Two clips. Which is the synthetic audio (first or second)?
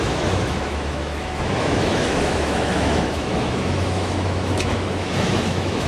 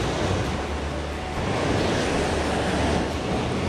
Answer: first